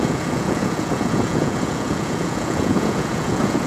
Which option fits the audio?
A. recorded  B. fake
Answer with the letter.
B